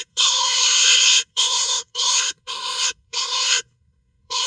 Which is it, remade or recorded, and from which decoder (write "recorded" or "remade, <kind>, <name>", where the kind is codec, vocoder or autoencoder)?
remade, codec, SNAC